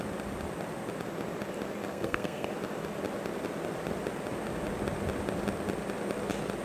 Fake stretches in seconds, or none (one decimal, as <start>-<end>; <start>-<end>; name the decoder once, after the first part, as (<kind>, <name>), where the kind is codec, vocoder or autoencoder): 1.9-2.5 (codec, SNAC)